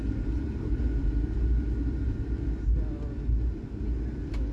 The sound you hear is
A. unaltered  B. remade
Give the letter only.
A